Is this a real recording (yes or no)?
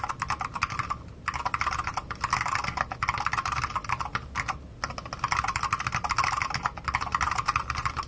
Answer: yes